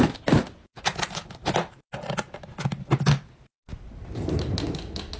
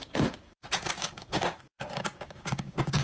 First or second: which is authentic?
first